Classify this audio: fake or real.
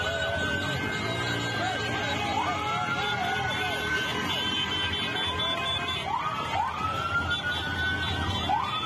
real